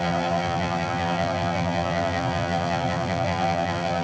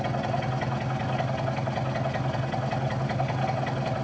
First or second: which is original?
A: second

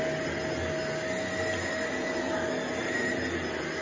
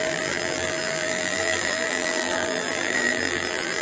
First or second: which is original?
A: first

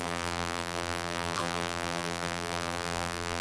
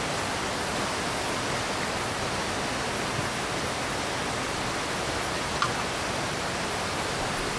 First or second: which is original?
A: second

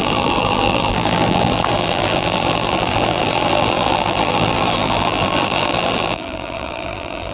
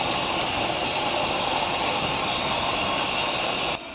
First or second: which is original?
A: second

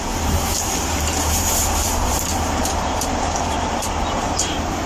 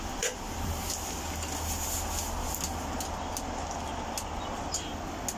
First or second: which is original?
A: second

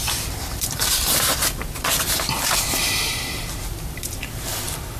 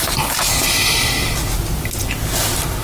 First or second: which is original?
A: second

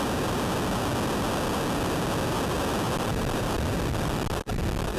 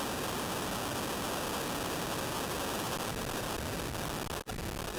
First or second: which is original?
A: second